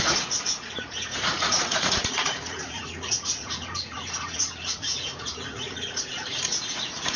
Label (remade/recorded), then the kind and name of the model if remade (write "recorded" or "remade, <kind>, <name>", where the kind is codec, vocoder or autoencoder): remade, vocoder, Vocos